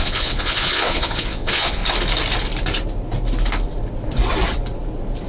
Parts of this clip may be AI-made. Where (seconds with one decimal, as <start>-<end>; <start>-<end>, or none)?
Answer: 0.0-1.8